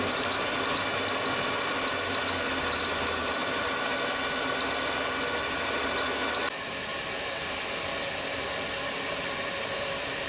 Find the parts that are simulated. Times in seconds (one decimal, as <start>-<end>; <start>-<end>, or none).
none